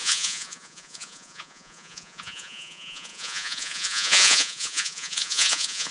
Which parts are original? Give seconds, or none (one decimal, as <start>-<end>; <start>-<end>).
none